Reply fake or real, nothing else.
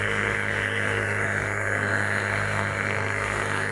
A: fake